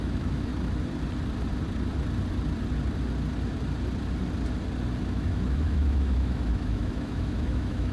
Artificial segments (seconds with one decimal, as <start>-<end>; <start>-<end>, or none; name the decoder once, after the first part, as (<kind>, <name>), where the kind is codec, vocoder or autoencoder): 0.0-0.5 (autoencoder, DAC-VAE); 5.0-7.9